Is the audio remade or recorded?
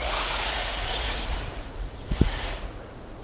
remade